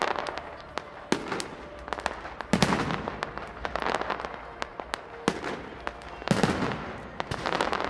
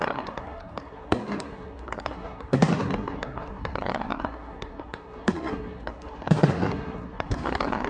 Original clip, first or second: first